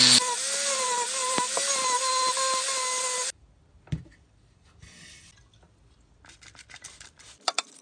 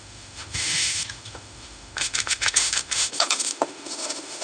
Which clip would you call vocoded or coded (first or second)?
second